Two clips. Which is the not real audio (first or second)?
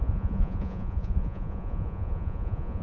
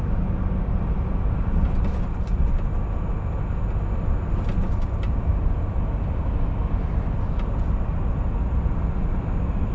first